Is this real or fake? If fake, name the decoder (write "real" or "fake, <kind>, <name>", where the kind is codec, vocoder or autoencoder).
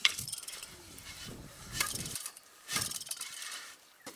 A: fake, vocoder, BigVGAN v2